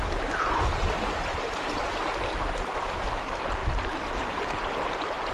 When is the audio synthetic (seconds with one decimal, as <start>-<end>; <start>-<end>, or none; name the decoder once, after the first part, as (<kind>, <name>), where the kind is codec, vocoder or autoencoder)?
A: none